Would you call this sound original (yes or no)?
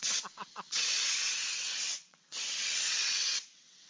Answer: no